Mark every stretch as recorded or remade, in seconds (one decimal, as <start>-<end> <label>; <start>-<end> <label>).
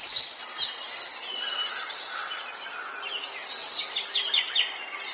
0.0-5.1 recorded